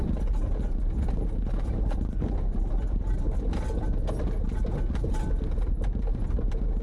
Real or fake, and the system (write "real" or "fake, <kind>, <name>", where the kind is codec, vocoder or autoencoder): real